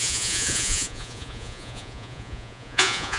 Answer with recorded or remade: remade